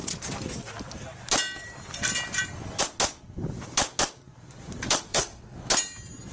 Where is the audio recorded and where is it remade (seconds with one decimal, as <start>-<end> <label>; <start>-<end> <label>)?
0.0-5.1 recorded; 5.1-5.7 remade; 5.7-6.3 recorded